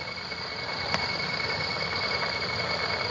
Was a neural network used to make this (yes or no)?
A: no